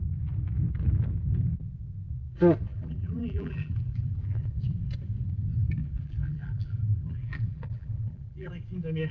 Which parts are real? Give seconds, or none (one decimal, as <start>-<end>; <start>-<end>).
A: 0.0-2.7; 4.6-5.8; 8.5-9.1